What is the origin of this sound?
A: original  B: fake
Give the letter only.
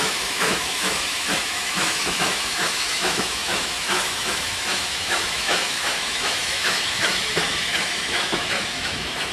B